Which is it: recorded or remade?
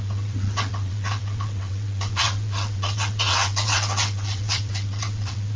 remade